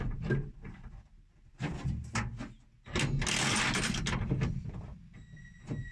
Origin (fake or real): real